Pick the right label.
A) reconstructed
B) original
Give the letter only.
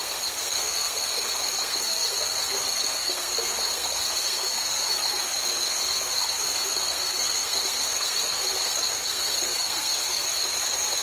A